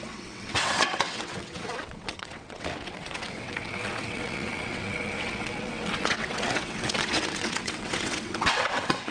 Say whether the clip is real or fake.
fake